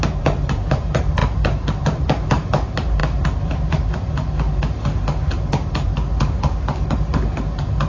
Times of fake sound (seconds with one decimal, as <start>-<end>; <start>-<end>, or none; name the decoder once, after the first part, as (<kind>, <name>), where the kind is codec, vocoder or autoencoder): 0.0-1.2 (vocoder, BigVGAN v2); 1.8-3.0